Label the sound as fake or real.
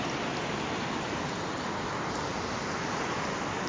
real